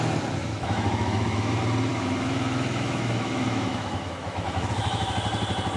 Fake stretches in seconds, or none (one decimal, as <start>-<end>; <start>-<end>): 0.4-1.5; 1.9-5.1